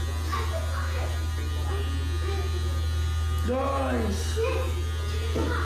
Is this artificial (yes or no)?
no